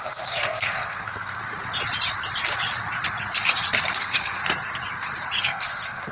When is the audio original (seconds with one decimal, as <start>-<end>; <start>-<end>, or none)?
1.4-4.0; 4.4-5.4